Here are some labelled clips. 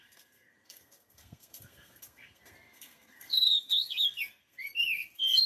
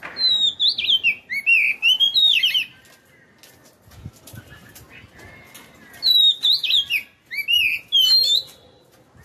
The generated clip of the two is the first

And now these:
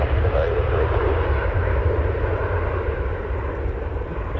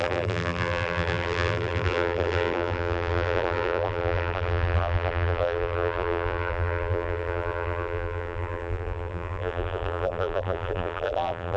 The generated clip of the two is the second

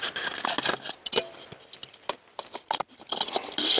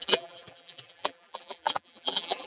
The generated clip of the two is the second